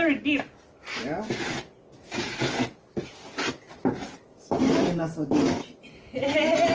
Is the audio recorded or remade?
recorded